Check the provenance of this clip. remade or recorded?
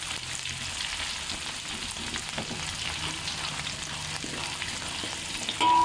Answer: recorded